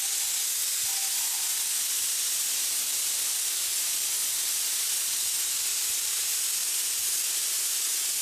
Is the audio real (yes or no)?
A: yes